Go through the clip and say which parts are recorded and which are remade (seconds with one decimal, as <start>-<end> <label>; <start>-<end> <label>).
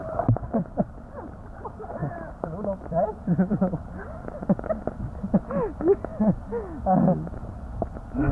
0.0-0.8 remade; 0.8-2.0 recorded; 2.0-3.9 remade; 3.9-8.3 recorded